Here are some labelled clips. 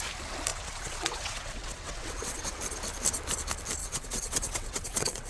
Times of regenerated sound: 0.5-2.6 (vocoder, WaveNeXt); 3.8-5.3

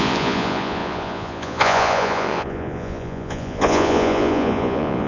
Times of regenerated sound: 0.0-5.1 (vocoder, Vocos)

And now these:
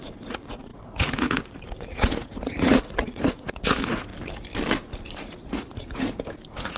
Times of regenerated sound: 0.0-4.1 (vocoder, Vocos); 5.2-6.8